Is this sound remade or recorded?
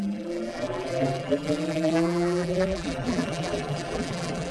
remade